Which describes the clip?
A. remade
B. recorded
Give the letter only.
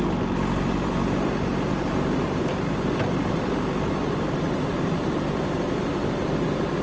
B